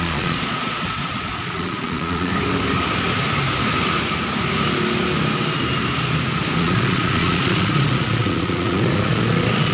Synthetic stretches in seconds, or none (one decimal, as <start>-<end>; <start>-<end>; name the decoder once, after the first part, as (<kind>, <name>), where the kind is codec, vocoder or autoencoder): 0.0-2.3 (vocoder, Vocos); 6.6-9.7